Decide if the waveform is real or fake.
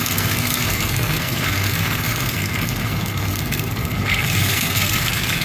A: fake